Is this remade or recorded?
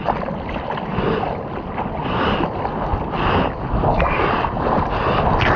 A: recorded